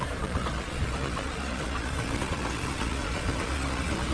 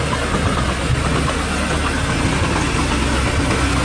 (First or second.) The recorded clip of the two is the second